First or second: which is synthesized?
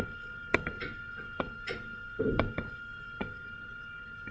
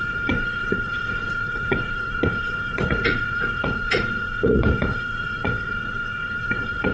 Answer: second